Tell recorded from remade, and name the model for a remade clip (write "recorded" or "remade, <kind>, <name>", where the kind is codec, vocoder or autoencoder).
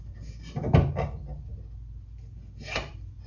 recorded